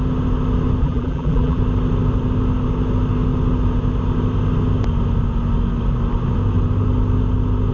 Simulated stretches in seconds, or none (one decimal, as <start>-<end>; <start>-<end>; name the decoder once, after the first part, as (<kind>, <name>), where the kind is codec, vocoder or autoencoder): 0.8-1.6 (vocoder, BigVGAN v2)